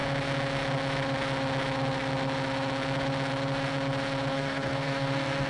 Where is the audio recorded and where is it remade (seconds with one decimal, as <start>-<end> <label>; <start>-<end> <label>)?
0.0-4.3 recorded; 4.3-5.5 remade

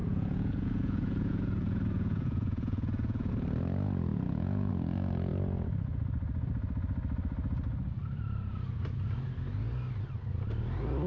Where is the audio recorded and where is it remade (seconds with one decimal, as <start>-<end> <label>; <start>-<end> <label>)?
0.0-3.3 remade; 3.3-4.1 recorded; 4.1-4.7 remade; 4.7-11.1 recorded

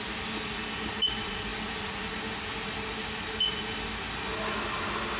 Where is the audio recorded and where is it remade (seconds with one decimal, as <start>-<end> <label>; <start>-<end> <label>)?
0.0-5.2 recorded

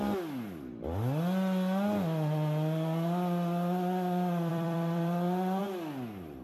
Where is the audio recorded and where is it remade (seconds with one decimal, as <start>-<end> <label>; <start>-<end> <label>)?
0.0-4.5 recorded; 4.5-5.6 remade; 5.6-6.4 recorded